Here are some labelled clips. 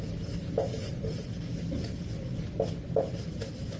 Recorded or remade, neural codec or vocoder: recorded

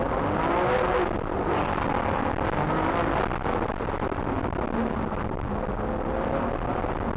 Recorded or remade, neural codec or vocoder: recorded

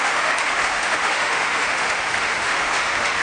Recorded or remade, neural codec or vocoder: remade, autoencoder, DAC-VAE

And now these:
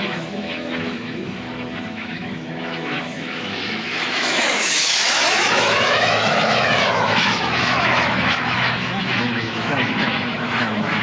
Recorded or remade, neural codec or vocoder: remade, autoencoder, DAC-VAE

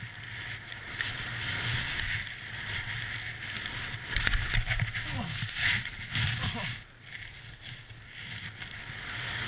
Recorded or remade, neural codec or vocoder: recorded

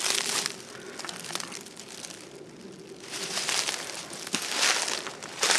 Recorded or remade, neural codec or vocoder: recorded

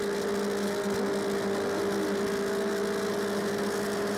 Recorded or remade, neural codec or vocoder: recorded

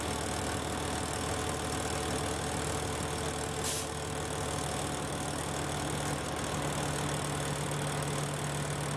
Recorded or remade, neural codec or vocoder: recorded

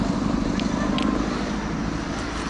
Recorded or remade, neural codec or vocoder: recorded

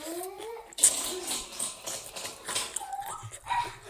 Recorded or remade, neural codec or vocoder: recorded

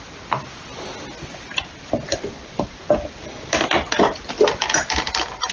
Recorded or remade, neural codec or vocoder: recorded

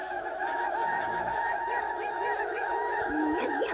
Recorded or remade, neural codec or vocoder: remade, autoencoder, DAC-VAE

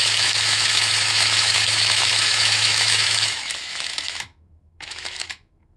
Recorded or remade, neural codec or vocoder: remade, autoencoder, DAC-VAE